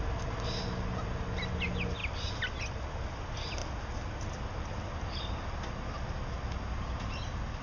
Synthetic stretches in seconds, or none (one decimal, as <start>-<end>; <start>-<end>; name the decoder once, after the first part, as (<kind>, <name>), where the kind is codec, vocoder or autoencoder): none

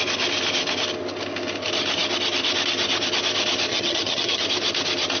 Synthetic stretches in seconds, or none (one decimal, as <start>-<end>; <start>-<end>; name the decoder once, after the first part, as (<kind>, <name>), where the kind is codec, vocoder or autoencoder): 3.7-4.4 (vocoder, HiFi-GAN)

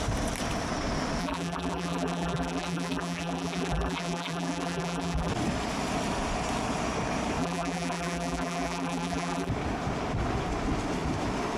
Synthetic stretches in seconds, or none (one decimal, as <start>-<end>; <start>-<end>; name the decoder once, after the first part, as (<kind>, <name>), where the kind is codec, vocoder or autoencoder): 1.2-5.3 (vocoder, BigVGAN v2); 7.4-9.5

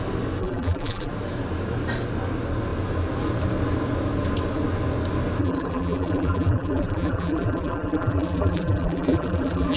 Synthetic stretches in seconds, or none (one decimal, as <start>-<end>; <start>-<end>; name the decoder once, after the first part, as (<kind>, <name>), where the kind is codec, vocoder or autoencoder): 0.4-1.1 (vocoder, BigVGAN v2); 5.4-9.8

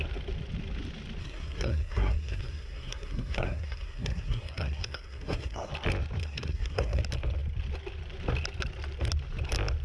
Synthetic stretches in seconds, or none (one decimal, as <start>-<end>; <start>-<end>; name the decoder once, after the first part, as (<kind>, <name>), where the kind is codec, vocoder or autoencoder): 1.2-5.7 (codec, SNAC); 6.2-7.0